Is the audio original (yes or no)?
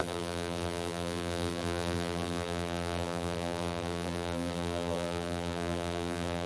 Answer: no